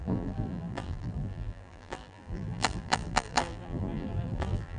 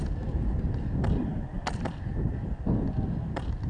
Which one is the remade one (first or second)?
first